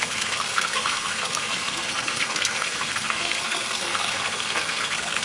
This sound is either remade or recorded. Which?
remade